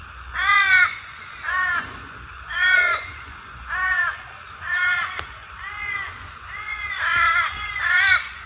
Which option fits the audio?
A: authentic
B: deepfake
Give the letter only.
B